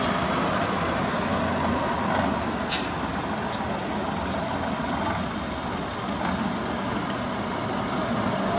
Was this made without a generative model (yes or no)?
yes